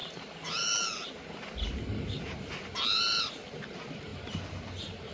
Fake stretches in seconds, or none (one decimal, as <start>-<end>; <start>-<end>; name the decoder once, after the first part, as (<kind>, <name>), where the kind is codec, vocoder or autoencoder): none